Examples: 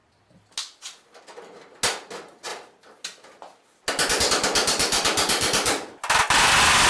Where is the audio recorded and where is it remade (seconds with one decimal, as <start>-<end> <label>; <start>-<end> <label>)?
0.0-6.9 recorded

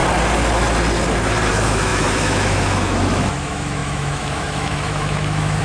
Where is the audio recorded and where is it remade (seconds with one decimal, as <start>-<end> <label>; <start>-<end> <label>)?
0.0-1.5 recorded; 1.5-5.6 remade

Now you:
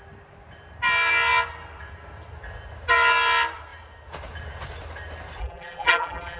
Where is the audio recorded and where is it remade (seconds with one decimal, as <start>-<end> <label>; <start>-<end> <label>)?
0.0-5.4 recorded; 5.4-6.4 remade

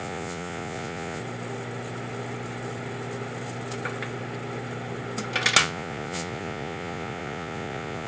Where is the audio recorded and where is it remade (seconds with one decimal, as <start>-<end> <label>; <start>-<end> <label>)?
0.0-1.2 remade; 1.2-5.6 recorded; 5.6-8.1 remade